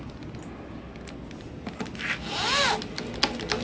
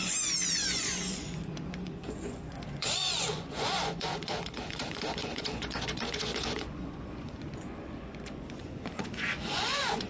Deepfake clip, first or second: second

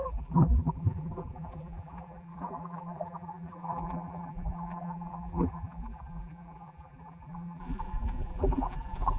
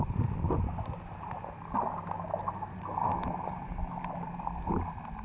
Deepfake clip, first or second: first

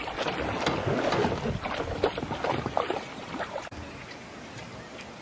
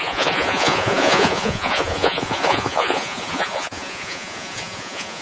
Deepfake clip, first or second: second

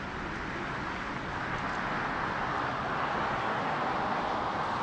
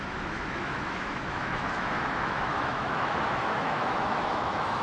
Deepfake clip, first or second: second